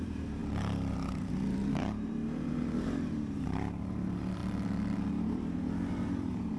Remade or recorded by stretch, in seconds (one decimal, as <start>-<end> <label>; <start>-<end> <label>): 0.0-4.4 remade; 4.4-5.1 recorded; 5.1-6.6 remade